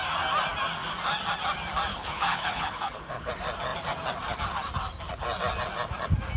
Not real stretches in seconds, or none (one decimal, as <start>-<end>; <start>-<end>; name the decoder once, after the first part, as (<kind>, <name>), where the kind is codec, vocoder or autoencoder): 1.9-3.3 (codec, HILCodec)